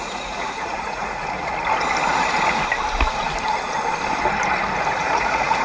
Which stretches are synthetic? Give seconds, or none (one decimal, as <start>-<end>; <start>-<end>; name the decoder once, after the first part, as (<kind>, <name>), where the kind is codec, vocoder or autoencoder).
0.0-1.5 (vocoder, Vocos); 4.9-5.6